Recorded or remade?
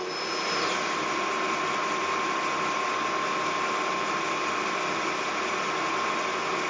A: recorded